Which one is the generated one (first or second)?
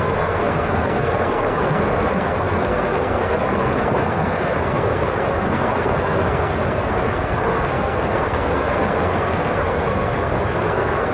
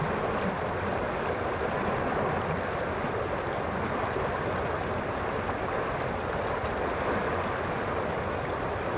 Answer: first